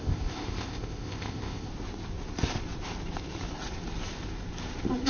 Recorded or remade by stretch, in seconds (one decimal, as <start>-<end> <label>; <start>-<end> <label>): 0.0-1.7 remade; 1.7-5.1 recorded